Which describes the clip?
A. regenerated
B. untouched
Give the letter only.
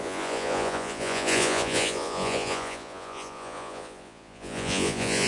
A